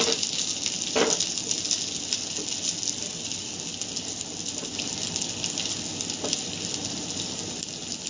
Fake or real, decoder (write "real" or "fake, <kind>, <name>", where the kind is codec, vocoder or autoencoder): real